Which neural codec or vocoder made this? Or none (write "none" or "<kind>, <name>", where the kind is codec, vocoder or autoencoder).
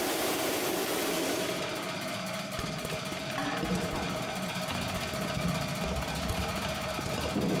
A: vocoder, BigVGAN v2